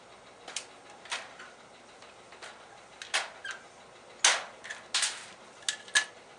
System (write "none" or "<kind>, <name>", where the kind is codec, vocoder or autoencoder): none